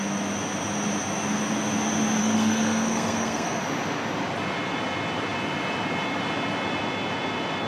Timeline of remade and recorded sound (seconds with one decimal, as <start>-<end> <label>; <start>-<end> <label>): 0.0-2.2 recorded; 2.2-3.6 remade; 3.6-7.7 recorded